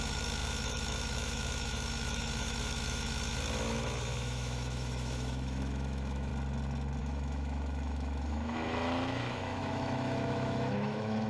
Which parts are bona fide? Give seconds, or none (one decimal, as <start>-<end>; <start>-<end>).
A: 6.3-7.0